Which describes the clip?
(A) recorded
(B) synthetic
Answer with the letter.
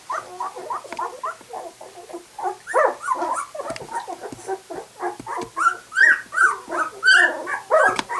A